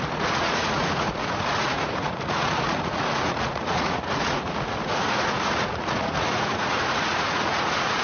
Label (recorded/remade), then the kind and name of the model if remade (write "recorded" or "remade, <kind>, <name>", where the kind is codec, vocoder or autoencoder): remade, vocoder, Vocos